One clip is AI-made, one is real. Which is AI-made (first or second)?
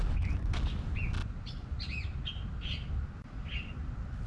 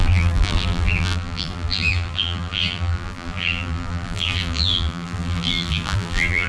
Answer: second